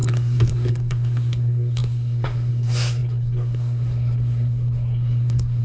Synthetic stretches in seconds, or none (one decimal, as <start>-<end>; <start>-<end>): 0.0-5.6